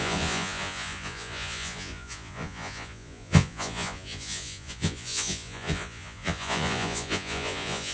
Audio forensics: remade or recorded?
remade